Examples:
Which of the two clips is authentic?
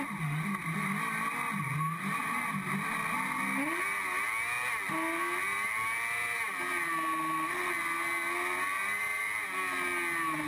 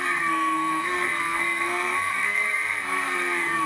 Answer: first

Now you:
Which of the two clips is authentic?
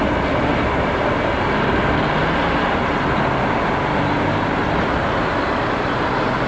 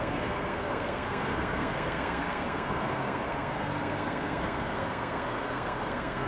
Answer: first